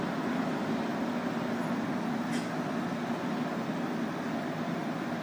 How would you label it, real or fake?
real